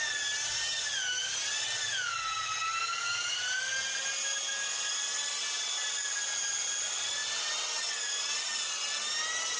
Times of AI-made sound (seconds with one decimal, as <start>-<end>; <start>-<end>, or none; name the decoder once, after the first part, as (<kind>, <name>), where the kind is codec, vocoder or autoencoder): none